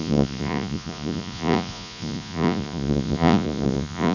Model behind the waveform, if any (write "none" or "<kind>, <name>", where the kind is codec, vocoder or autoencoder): vocoder, Vocos